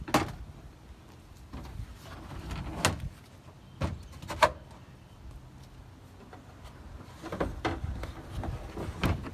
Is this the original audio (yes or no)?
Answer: yes